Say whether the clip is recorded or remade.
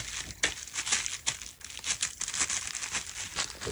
recorded